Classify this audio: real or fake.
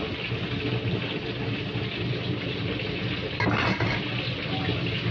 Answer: real